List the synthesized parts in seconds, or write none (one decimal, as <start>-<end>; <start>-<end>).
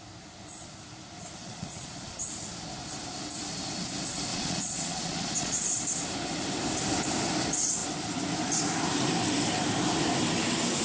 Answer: 1.4-2.2; 4.3-5.8